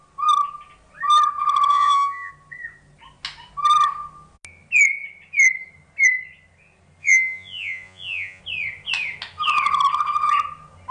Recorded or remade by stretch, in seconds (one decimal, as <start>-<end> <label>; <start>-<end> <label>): 0.0-1.7 recorded; 1.7-2.3 remade; 2.3-7.0 recorded; 7.0-8.4 remade; 8.4-10.9 recorded